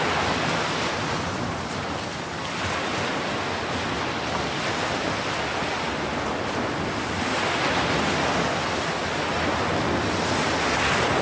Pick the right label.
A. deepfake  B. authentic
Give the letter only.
B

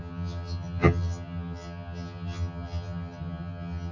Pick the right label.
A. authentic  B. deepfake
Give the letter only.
B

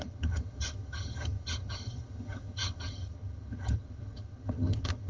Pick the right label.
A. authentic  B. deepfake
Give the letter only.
B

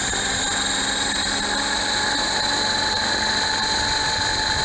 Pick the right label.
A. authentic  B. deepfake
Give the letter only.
A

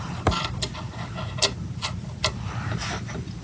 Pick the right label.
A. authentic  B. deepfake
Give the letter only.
A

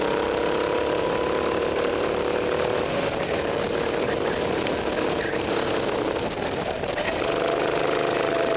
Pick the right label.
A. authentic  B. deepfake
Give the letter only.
A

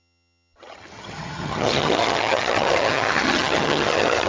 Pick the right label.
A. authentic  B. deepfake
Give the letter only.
B